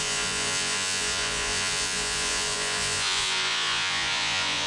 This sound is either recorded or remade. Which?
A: remade